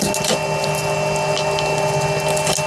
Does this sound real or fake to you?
real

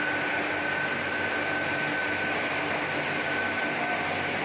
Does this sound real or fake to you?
real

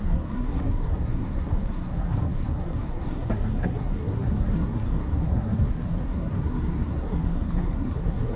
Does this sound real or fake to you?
fake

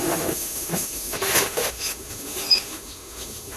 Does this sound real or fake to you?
fake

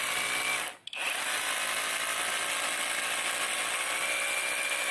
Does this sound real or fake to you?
real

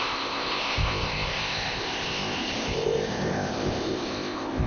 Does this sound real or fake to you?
fake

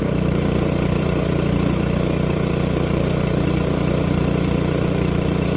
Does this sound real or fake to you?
fake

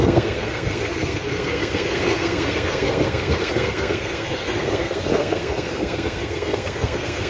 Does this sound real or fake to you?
fake